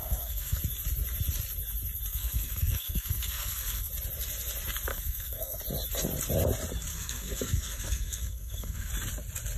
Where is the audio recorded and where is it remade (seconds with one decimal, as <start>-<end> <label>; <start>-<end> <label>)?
0.0-0.6 remade; 0.6-2.1 recorded; 2.1-3.9 remade; 3.9-4.9 recorded; 4.9-5.6 remade; 5.6-6.9 recorded; 6.9-8.9 remade; 8.9-9.6 recorded